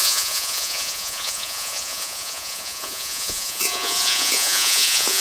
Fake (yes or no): yes